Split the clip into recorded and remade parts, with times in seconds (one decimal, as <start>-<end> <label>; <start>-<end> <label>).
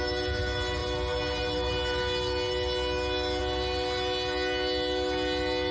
0.0-5.7 recorded